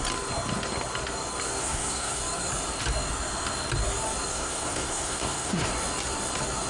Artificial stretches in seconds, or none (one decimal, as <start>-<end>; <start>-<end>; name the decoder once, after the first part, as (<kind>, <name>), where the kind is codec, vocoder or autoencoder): 1.6-2.2 (codec, SNAC); 4.3-5.7